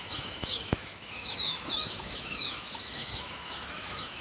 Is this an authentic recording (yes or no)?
no